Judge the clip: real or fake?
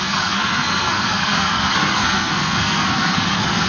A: fake